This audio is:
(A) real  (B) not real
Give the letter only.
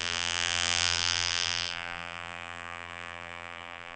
B